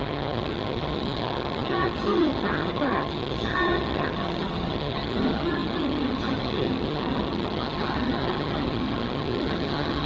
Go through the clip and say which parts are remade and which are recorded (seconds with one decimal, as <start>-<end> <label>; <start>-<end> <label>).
0.0-10.1 remade